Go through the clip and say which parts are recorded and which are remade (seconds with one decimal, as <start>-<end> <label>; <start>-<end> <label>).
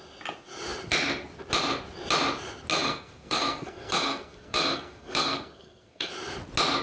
0.0-2.7 recorded; 2.7-6.1 remade; 6.1-6.8 recorded